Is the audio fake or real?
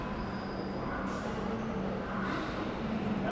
real